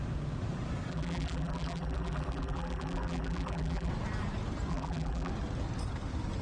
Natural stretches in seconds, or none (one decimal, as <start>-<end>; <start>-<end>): 0.0-0.9; 3.9-4.7; 5.3-6.4